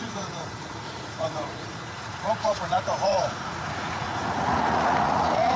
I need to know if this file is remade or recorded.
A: remade